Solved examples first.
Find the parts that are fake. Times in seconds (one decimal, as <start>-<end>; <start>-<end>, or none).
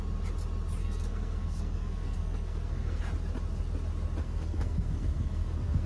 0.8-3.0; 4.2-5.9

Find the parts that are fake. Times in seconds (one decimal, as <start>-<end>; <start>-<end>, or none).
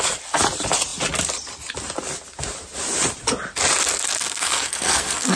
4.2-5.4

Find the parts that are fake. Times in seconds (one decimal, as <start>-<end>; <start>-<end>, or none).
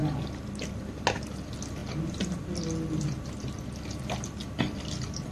none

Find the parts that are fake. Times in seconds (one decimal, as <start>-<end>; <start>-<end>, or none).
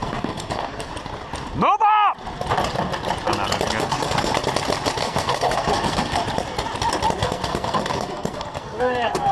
0.0-0.9; 3.8-4.3; 5.0-6.2; 7.2-9.3